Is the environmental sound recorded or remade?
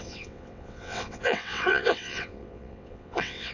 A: remade